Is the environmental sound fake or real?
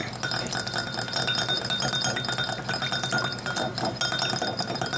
real